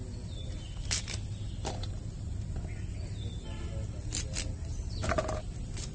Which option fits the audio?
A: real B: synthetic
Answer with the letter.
A